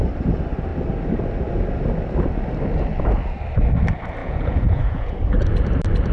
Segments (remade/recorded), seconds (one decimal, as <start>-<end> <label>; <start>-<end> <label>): 0.0-4.2 recorded; 4.2-5.1 remade; 5.1-6.1 recorded